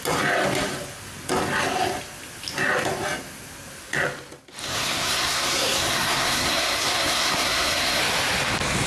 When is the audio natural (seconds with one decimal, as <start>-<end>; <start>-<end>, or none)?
0.0-4.6; 8.0-8.9